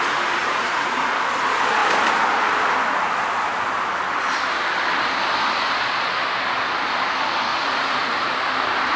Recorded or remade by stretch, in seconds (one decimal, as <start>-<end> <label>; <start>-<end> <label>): 0.0-0.4 recorded; 0.4-1.1 remade; 1.1-7.5 recorded; 7.5-8.3 remade; 8.3-9.0 recorded